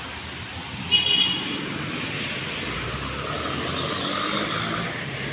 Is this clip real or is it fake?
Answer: real